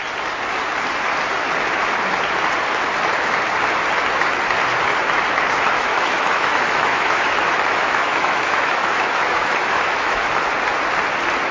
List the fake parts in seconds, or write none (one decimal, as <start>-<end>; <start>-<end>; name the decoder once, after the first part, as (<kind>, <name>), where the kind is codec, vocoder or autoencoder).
5.9-10.3 (autoencoder, DAC-VAE)